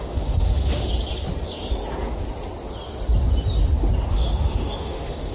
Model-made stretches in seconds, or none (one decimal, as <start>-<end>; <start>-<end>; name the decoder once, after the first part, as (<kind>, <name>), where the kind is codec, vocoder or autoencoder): 0.0-0.9 (autoencoder, DAC-VAE); 4.1-5.3